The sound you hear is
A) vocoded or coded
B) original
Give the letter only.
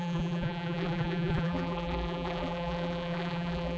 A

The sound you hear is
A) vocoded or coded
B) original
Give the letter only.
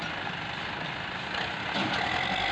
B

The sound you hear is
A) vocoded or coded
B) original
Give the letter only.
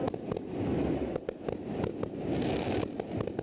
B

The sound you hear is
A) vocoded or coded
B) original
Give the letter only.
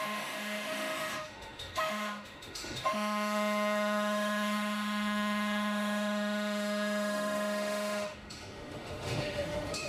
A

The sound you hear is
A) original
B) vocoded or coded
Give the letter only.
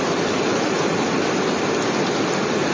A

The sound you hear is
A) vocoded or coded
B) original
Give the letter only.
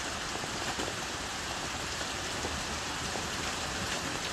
A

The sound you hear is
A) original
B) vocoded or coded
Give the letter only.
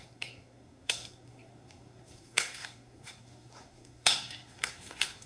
B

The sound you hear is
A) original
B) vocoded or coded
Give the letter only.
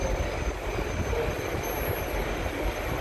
A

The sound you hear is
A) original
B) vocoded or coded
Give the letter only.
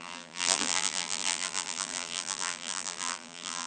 B